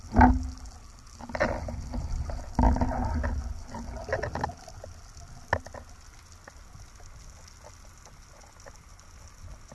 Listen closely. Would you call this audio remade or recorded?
recorded